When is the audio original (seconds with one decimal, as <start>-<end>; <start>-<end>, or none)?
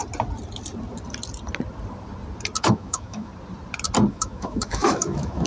0.0-2.6; 3.3-4.1